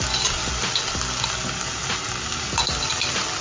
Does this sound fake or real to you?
real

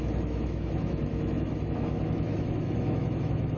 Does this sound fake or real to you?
fake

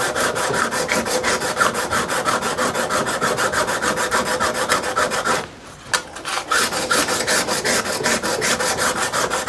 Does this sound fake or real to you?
real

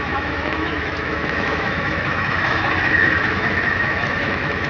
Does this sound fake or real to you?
fake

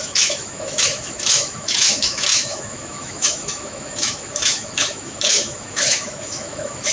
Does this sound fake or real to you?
fake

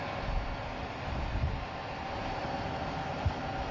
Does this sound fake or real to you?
real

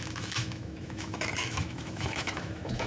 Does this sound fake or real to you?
fake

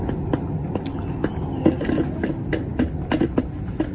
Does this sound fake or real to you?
real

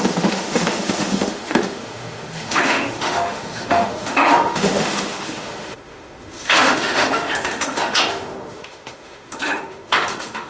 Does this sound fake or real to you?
fake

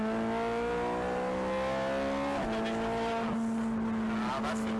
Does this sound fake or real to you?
real